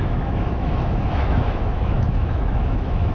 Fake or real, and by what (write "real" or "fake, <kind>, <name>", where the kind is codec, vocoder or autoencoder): fake, autoencoder, DAC-VAE